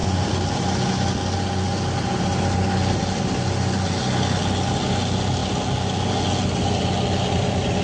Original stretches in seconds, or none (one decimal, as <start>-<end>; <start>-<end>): 0.0-7.8